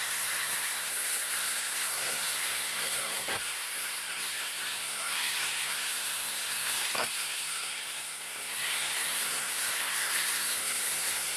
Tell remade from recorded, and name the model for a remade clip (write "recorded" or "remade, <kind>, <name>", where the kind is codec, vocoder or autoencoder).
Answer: remade, codec, SNAC